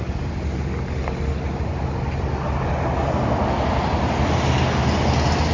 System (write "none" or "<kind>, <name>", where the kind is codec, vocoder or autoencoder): none